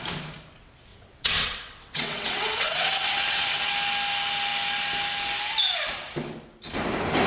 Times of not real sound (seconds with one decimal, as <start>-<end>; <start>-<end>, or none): 0.9-3.7